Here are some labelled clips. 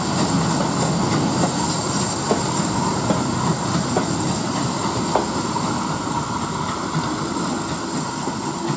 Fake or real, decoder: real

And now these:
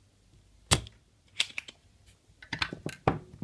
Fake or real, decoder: real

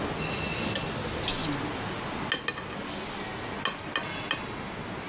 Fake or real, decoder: real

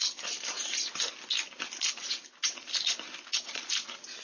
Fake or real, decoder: real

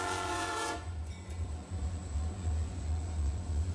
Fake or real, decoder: fake, vocoder, Vocos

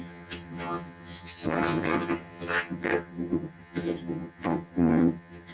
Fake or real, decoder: fake, vocoder, HiFi-GAN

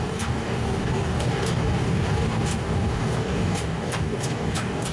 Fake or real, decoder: fake, codec, DAC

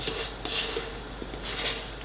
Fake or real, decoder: real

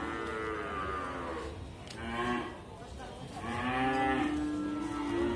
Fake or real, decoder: real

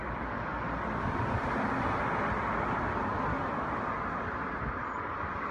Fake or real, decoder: real